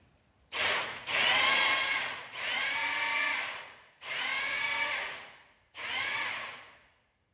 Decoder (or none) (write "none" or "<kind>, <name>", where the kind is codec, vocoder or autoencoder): vocoder, Vocos